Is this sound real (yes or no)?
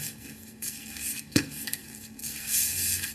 no